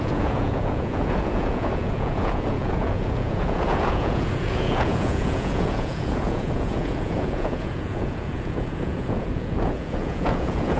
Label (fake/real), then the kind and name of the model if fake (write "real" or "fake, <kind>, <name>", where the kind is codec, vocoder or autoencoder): fake, vocoder, Vocos